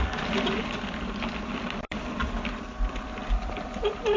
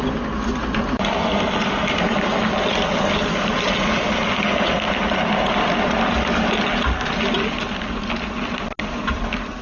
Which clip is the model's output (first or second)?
first